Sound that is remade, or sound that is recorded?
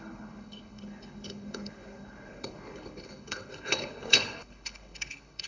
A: remade